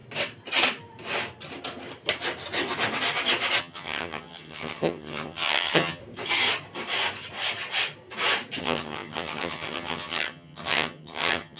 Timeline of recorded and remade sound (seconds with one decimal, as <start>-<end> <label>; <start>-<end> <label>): 0.0-3.6 recorded; 3.6-6.0 remade; 6.0-8.6 recorded; 8.6-11.6 remade